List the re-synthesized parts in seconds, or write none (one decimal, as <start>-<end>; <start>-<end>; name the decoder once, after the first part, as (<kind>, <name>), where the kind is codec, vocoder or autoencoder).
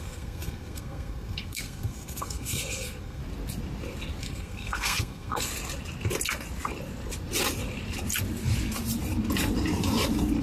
0.0-3.2 (codec, SNAC); 4.2-5.5